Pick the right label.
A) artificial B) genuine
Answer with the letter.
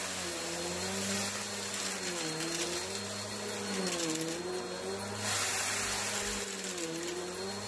B